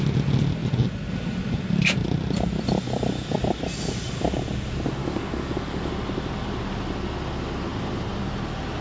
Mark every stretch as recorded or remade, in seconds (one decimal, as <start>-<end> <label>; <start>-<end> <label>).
0.0-5.0 recorded; 5.0-5.9 remade; 5.9-8.8 recorded